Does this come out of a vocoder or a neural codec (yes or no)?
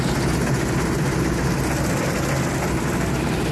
no